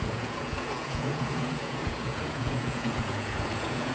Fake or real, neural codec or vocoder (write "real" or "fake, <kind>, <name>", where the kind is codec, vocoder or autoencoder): fake, vocoder, Vocos